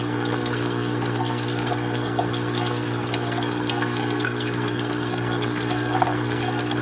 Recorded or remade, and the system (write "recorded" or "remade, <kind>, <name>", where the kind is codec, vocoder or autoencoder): remade, codec, SNAC